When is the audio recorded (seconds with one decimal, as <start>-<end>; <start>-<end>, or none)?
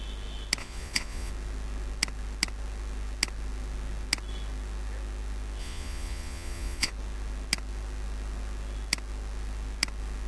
0.0-0.6; 1.3-5.6; 6.9-10.3